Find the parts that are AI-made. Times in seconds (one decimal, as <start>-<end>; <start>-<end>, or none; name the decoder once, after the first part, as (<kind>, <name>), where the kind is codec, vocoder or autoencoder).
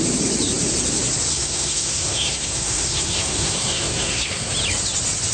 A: 1.3-4.5 (codec, SNAC)